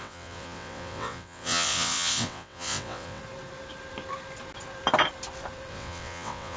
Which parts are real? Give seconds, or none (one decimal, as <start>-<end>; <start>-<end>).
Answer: 3.2-5.7